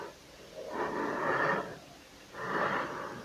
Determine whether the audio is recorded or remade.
remade